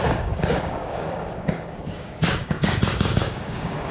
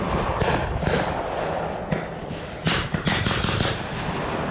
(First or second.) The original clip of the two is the second